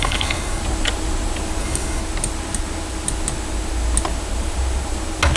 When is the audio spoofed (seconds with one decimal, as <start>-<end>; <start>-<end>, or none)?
0.0-0.6; 1.6-2.0